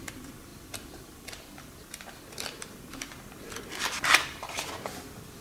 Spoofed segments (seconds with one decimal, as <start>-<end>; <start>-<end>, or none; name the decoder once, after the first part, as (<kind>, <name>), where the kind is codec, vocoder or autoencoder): 0.0-5.4 (vocoder, BigVGAN v2)